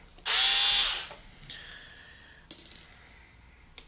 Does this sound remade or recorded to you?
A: recorded